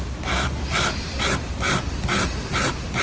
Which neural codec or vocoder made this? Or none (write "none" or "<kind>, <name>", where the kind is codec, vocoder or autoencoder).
none